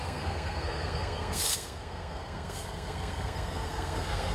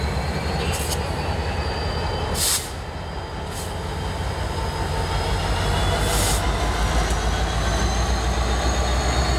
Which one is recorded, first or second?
second